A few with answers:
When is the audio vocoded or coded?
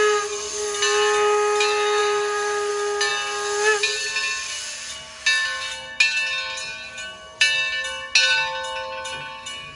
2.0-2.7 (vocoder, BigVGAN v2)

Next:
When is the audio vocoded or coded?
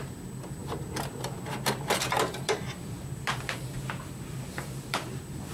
0.0-5.5 (vocoder, BigVGAN v2)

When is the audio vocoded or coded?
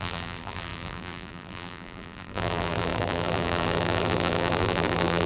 0.0-5.3 (vocoder, BigVGAN v2)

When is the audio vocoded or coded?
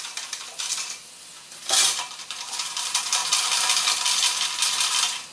0.0-3.2 (vocoder, BigVGAN v2)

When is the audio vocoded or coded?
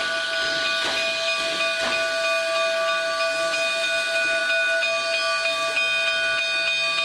none